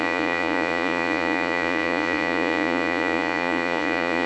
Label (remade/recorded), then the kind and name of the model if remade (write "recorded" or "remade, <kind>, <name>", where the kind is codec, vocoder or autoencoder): remade, vocoder, Vocos